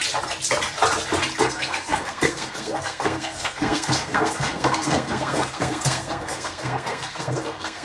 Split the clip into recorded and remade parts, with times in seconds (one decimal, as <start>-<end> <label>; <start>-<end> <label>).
0.0-1.4 recorded; 1.4-7.8 remade